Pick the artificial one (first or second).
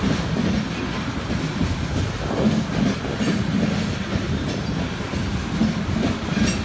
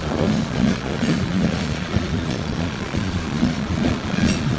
second